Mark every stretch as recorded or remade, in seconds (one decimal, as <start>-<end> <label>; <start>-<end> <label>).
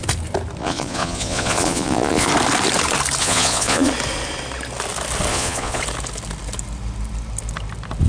0.0-0.6 recorded; 0.6-2.3 remade; 2.3-3.2 recorded; 3.2-3.9 remade; 3.9-5.3 recorded; 5.3-5.8 remade; 5.8-8.1 recorded